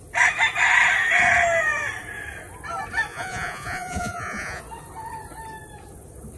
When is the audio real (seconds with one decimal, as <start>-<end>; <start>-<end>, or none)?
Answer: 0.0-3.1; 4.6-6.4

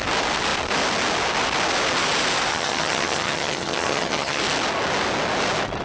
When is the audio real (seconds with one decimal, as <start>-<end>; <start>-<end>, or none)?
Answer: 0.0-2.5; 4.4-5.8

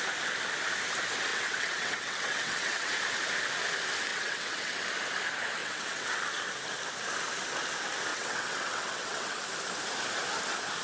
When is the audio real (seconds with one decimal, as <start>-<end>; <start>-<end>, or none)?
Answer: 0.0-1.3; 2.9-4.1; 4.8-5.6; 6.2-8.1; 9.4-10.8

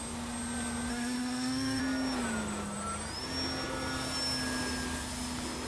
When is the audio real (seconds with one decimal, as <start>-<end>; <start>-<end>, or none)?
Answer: 0.0-0.9; 1.8-5.7